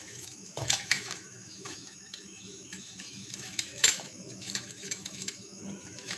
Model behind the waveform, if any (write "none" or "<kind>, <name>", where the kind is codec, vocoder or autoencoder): autoencoder, DAC-VAE